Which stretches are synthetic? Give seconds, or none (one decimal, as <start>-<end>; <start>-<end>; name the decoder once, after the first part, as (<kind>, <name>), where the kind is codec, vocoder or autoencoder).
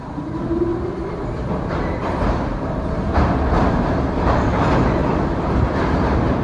0.0-0.7 (vocoder, BigVGAN v2); 1.9-5.0